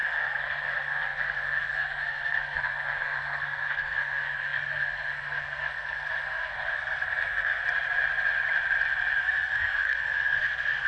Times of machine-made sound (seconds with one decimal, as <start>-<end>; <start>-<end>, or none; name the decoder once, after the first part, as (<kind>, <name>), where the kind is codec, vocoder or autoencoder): 0.0-7.6 (codec, SNAC); 9.2-10.9